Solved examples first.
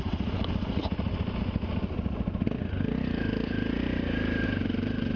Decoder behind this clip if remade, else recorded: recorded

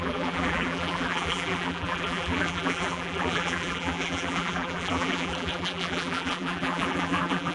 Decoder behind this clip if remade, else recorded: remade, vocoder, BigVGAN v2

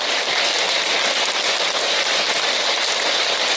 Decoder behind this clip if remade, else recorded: recorded